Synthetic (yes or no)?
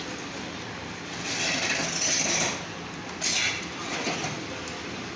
no